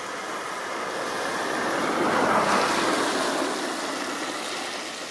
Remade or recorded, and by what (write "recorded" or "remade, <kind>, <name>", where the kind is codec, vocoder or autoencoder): recorded